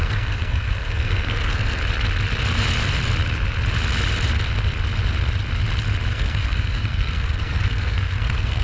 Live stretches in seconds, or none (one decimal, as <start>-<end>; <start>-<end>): 1.8-6.1